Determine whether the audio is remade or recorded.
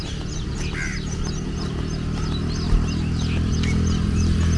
recorded